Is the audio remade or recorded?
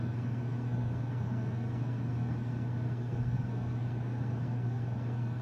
remade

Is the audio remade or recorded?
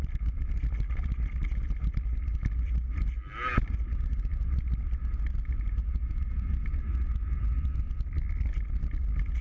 recorded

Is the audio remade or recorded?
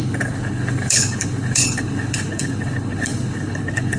remade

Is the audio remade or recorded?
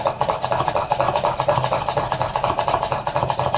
recorded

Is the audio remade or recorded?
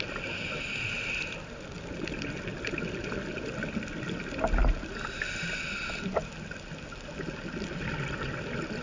recorded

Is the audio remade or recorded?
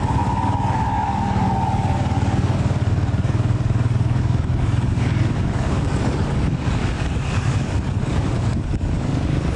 remade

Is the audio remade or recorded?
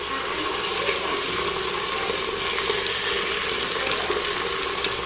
recorded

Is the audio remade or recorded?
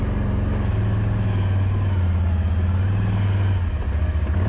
recorded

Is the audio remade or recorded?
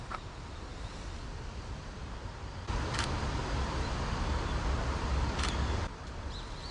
recorded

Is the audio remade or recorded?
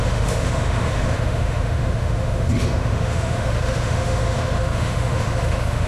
remade